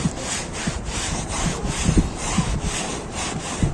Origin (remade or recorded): recorded